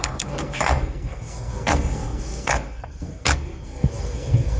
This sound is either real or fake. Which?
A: fake